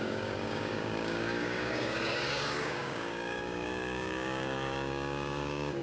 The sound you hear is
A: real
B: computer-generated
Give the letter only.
B